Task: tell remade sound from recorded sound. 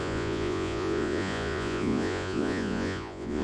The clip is remade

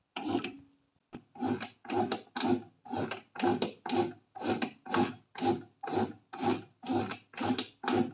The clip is recorded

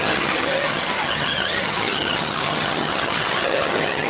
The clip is remade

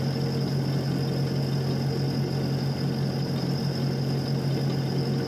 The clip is recorded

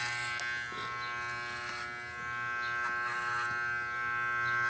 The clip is recorded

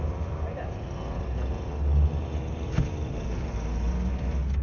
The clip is recorded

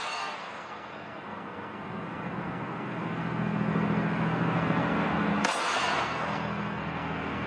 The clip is remade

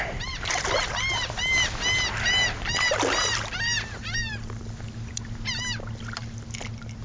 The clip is remade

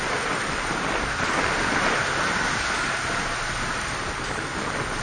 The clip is recorded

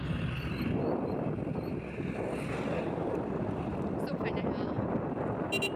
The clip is recorded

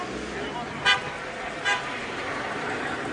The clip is recorded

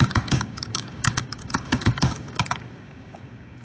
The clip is remade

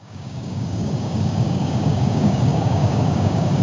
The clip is remade